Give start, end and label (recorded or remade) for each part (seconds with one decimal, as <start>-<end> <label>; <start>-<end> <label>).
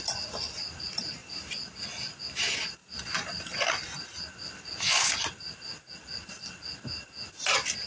0.0-7.9 recorded